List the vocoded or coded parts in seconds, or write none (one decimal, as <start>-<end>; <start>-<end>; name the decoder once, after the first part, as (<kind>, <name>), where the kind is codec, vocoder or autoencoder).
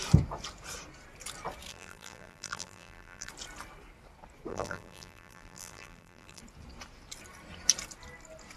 1.7-3.3 (vocoder, BigVGAN v2); 4.5-6.4